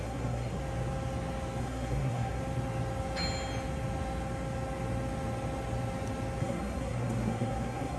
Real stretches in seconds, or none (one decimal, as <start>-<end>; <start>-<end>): 0.6-1.6; 2.4-6.4

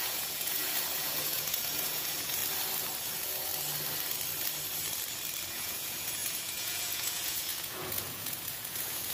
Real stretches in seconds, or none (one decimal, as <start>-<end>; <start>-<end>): 2.4-3.0; 3.5-5.5

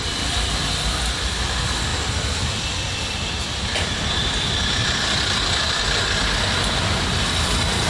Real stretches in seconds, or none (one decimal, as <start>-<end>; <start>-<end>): 0.0-1.9; 3.6-4.8; 5.8-7.9

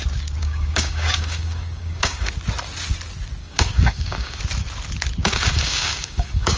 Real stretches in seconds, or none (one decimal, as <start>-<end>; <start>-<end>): 0.0-0.4; 2.3-3.4; 4.4-5.2

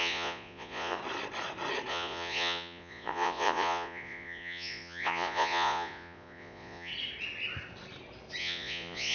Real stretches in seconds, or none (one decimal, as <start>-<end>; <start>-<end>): 1.0-1.9; 6.9-8.4